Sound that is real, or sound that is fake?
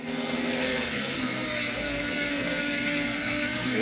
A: fake